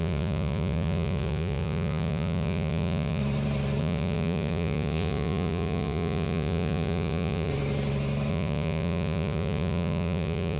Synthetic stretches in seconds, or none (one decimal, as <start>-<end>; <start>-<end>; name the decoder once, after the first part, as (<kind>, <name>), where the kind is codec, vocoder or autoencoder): 0.0-3.2 (vocoder, Vocos); 3.8-7.5; 8.3-10.6